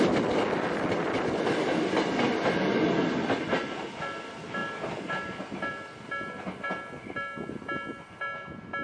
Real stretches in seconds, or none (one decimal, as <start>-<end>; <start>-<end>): 0.0-8.8